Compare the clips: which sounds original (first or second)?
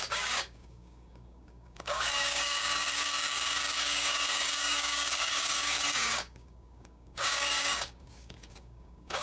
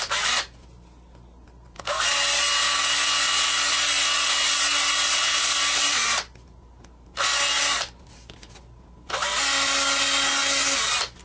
second